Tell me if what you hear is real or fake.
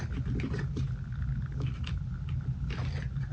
real